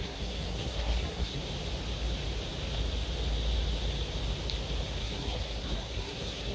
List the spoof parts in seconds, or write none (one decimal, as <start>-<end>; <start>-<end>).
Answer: 0.0-1.4; 5.0-6.5